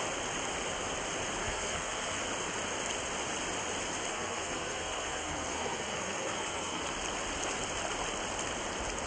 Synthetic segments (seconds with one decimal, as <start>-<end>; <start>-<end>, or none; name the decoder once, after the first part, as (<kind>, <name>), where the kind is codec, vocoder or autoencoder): 1.4-2.2 (codec, SNAC); 4.1-6.8